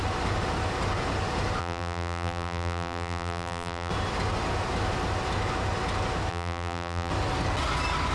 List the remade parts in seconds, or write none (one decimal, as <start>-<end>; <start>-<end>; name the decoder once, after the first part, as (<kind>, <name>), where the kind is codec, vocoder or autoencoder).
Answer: 1.6-3.9 (vocoder, BigVGAN v2); 6.3-7.1